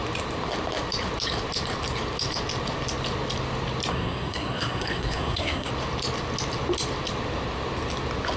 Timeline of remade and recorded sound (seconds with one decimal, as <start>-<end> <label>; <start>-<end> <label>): 0.0-3.9 recorded; 3.9-5.7 remade; 5.7-8.4 recorded